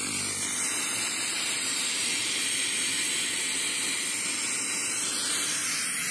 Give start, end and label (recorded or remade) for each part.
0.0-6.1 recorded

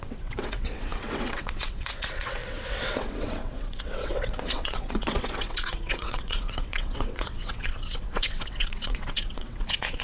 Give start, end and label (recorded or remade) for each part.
0.0-10.0 remade

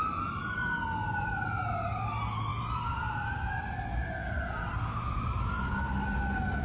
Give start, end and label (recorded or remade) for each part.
0.0-6.6 recorded

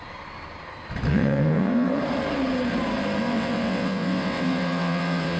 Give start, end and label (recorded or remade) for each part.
0.0-1.1 recorded; 1.1-2.0 remade; 2.0-3.2 recorded; 3.2-5.4 remade

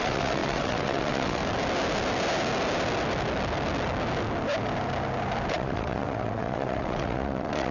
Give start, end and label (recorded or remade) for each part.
0.0-1.4 remade; 1.4-5.5 recorded; 5.5-7.7 remade

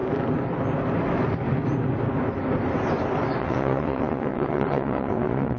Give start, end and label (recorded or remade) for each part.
0.0-3.4 recorded; 3.4-5.6 remade

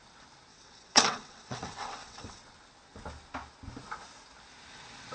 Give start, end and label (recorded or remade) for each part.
0.0-0.5 recorded; 0.5-2.4 remade; 2.4-5.1 recorded

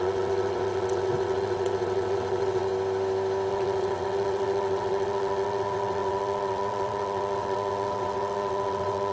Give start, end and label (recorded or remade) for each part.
0.0-2.7 remade; 2.7-3.5 recorded; 3.5-9.1 remade